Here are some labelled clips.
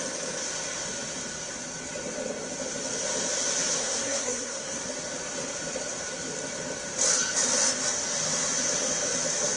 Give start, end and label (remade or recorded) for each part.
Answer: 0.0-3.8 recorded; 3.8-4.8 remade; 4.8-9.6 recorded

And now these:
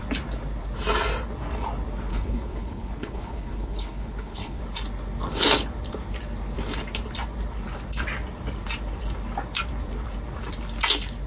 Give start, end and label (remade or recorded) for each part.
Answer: 0.0-2.1 recorded; 2.1-4.6 remade; 4.6-11.3 recorded

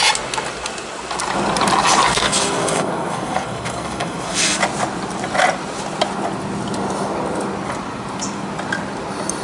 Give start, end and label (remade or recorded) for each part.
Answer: 0.0-2.1 recorded; 2.1-4.6 remade; 4.6-9.4 recorded

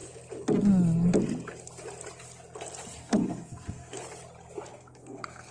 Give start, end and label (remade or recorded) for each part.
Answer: 0.0-3.0 recorded; 3.0-4.0 remade; 4.0-4.7 recorded; 4.7-5.5 remade

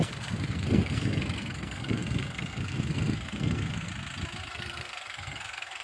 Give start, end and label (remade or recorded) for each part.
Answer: 0.0-3.9 remade; 3.9-4.5 recorded; 4.5-5.8 remade

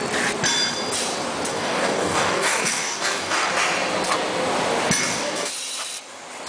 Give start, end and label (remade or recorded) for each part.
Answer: 0.0-1.5 recorded; 1.5-3.5 remade; 3.5-5.0 recorded; 5.0-5.5 remade; 5.5-6.5 recorded